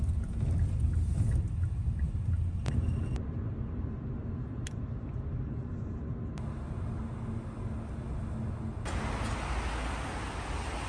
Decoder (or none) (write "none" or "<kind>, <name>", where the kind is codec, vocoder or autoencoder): none